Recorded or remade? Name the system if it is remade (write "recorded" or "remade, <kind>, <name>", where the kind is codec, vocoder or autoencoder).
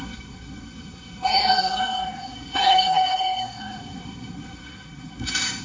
remade, codec, SNAC